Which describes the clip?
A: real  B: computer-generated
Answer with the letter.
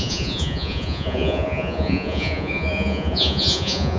B